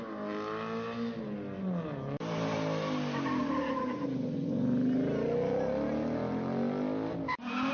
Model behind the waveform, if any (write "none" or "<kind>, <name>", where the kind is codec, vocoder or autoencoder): none